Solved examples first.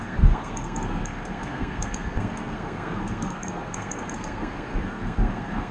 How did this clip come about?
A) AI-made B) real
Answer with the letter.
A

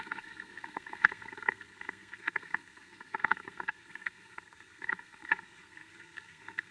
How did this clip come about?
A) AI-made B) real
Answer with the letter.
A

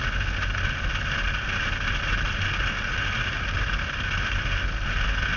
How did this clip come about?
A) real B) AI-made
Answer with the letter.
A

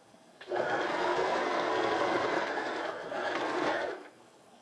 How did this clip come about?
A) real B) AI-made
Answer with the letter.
B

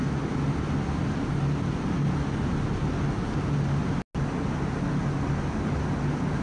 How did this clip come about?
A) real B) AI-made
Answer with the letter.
A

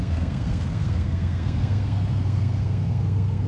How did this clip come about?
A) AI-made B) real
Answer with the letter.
A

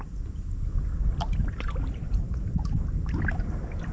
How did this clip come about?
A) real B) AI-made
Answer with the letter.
A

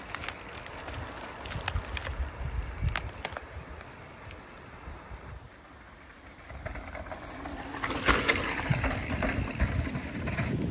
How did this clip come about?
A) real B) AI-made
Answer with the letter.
A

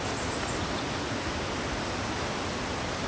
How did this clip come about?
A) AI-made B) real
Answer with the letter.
B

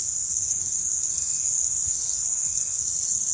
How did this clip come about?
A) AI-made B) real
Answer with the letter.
A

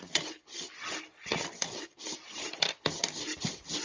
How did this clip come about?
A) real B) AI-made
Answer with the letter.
A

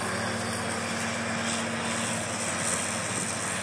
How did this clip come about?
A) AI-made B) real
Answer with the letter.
B